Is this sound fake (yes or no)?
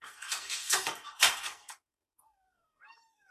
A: yes